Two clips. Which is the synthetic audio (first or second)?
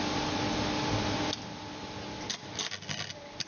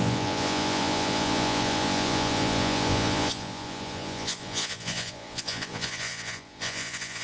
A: second